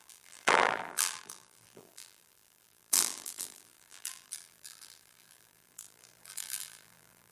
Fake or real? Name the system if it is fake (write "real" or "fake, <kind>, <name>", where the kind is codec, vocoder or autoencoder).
fake, vocoder, BigVGAN v2